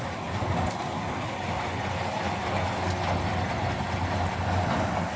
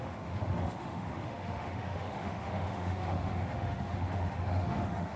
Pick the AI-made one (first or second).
second